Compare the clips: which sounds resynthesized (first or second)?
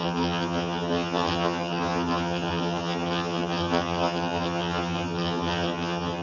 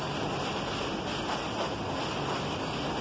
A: first